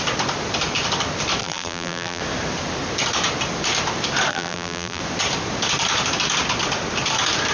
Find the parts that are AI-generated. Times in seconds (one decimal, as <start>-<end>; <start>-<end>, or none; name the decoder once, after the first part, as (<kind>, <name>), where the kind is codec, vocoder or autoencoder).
1.4-2.2 (vocoder, BigVGAN v2); 4.3-5.0